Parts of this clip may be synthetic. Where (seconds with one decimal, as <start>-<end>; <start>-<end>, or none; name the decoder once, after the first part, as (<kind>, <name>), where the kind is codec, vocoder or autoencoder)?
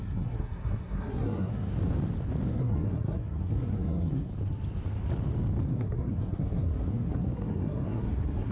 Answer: 0.0-1.7 (codec, SNAC); 2.5-4.3; 5.7-8.5